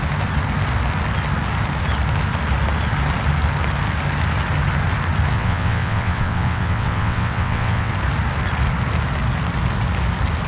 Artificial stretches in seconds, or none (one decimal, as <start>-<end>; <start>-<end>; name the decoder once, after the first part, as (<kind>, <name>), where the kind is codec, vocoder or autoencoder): 5.3-7.9 (vocoder, WaveNeXt)